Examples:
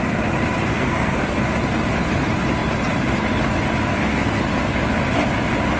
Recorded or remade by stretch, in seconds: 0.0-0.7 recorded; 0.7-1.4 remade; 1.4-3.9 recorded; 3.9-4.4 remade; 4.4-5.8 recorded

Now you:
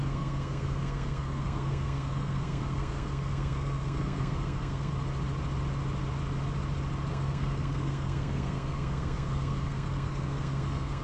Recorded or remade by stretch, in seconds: 0.0-4.9 remade; 4.9-7.1 recorded; 7.1-11.0 remade

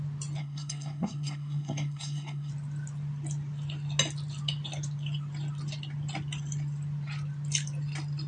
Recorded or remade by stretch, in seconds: 0.0-0.4 recorded; 0.4-2.5 remade; 2.5-8.3 recorded